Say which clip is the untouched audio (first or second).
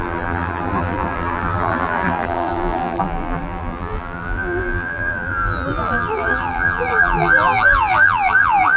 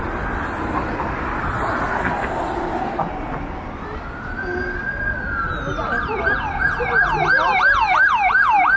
second